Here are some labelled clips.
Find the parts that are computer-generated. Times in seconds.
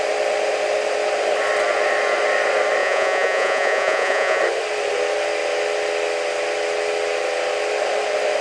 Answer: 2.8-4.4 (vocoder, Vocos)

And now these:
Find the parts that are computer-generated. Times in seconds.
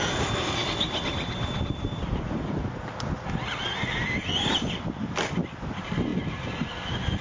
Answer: none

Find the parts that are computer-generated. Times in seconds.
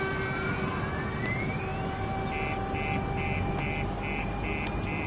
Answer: none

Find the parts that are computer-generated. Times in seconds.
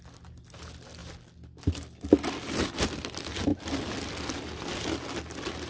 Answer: none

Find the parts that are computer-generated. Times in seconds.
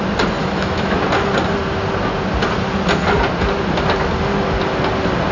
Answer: 0.4-1.0 (autoencoder, DAC-VAE)